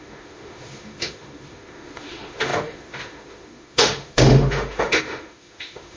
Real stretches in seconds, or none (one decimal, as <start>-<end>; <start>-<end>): none

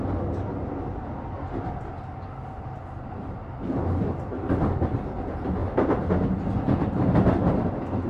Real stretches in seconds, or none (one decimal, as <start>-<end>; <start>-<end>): 0.0-8.1